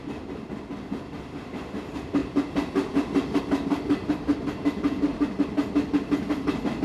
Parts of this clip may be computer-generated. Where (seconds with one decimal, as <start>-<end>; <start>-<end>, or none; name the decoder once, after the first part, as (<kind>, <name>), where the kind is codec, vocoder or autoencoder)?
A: none